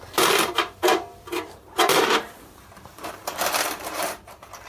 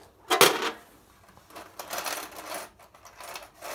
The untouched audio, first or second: second